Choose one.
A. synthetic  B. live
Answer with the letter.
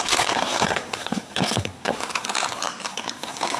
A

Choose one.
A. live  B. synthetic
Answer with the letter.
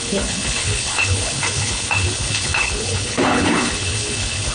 B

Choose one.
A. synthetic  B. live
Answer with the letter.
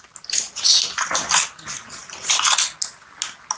B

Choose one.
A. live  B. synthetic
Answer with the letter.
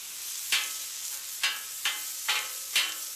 A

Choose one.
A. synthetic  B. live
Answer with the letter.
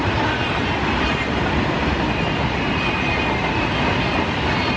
B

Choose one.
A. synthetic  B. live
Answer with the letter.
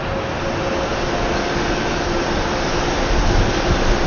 B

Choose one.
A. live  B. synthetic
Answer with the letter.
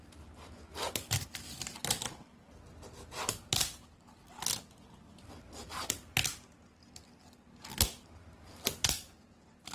A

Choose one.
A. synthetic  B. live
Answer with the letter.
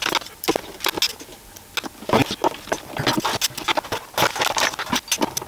B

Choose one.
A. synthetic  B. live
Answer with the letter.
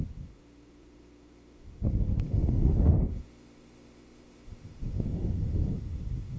A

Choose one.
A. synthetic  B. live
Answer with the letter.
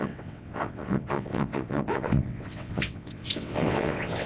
A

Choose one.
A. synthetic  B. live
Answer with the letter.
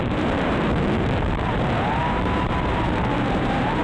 A